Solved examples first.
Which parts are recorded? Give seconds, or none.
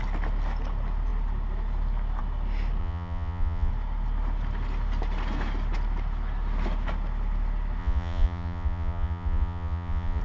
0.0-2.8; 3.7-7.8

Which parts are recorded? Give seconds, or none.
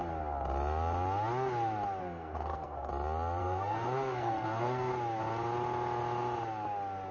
0.0-2.0; 2.9-3.4; 4.9-7.1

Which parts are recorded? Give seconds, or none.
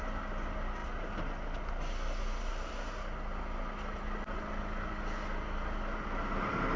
0.0-6.8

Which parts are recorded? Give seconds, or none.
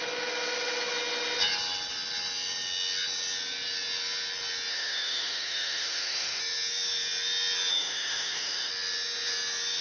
0.0-4.7; 6.4-7.7; 8.7-9.8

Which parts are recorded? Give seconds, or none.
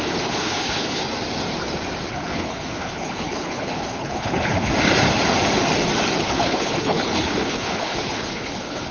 1.0-2.1; 4.7-6.2